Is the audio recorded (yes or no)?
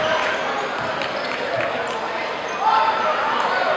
yes